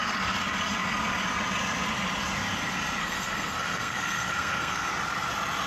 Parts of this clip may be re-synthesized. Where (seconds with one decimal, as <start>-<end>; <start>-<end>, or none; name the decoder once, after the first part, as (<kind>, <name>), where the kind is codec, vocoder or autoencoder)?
3.0-4.9 (codec, SNAC)